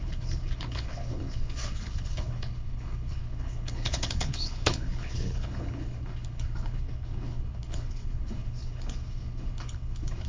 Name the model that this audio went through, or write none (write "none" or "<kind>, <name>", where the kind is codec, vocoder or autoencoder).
codec, HILCodec